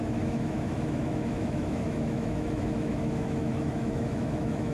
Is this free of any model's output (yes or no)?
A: no